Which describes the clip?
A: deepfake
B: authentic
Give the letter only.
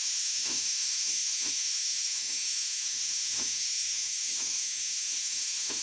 A